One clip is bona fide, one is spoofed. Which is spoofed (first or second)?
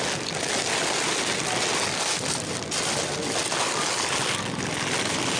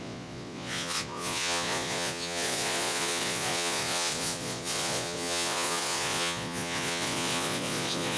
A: second